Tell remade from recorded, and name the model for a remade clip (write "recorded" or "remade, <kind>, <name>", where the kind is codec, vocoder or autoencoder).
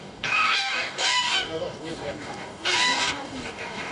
remade, codec, DAC